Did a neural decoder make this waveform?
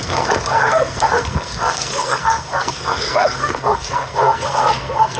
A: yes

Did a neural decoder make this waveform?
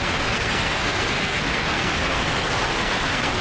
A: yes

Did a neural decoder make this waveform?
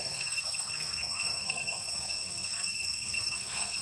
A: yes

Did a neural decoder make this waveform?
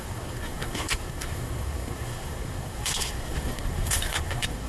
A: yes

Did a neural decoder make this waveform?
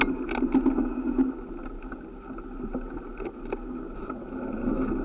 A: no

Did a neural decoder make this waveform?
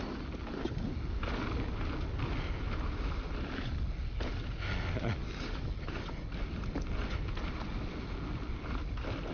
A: no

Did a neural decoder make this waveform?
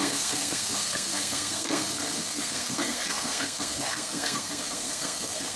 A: yes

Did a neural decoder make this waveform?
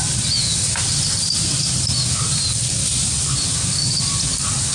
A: no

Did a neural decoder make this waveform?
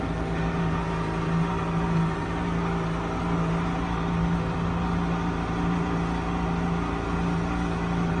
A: no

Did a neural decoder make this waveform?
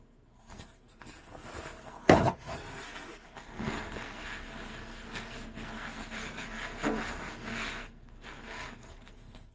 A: yes